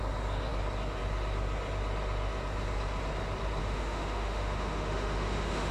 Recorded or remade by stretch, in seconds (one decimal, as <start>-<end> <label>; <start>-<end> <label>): 0.0-3.6 recorded; 3.6-5.7 remade